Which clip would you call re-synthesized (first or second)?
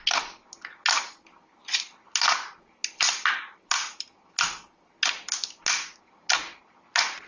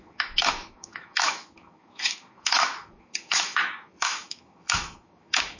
second